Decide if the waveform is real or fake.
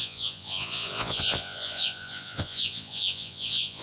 fake